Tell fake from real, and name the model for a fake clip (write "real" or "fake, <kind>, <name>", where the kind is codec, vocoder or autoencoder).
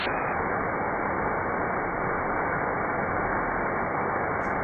real